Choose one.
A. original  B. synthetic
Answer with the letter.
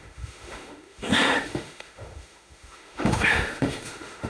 B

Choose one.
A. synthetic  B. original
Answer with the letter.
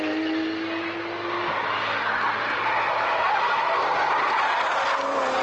B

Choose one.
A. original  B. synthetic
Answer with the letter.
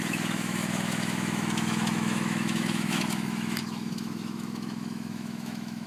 B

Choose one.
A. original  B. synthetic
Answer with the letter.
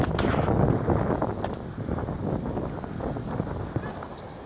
A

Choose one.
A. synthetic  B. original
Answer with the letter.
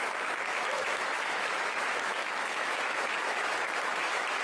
A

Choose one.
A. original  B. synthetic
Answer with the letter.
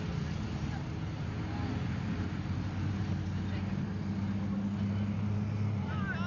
A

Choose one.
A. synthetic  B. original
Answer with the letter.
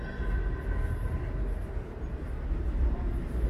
B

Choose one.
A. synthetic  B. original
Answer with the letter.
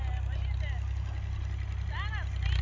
B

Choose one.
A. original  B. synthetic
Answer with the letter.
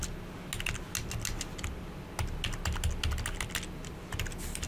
A